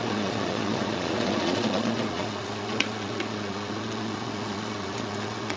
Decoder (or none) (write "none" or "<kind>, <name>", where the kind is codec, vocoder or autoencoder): vocoder, Vocos